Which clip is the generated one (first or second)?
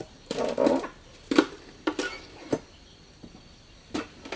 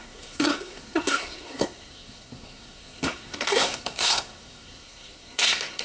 second